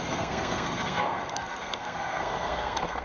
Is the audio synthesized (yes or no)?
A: yes